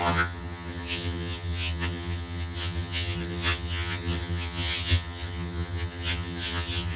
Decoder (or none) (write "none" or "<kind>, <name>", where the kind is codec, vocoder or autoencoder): vocoder, HiFi-GAN